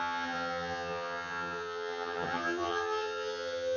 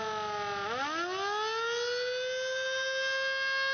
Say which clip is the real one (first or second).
second